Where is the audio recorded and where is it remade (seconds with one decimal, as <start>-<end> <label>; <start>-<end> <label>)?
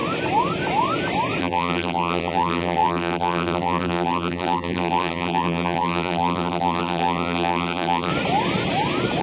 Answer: 0.0-1.4 recorded; 1.4-8.1 remade; 8.1-9.2 recorded